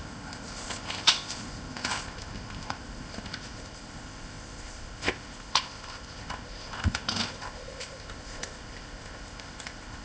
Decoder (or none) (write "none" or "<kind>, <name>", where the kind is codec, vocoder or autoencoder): codec, ZipCodec